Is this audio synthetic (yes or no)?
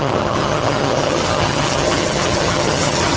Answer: yes